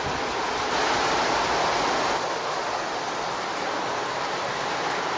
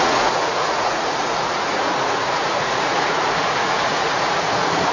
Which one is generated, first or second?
second